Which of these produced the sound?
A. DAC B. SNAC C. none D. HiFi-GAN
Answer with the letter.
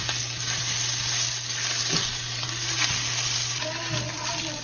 C